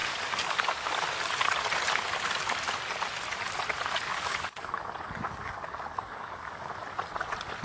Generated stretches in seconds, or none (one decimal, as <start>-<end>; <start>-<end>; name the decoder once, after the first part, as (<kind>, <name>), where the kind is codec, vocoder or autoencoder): 0.0-1.2 (codec, DAC); 4.1-6.7